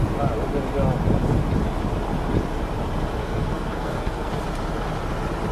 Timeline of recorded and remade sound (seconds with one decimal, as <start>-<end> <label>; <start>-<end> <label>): 0.0-3.2 recorded; 3.2-4.3 remade; 4.3-5.5 recorded